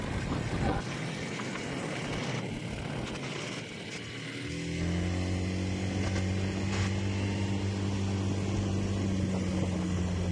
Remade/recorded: recorded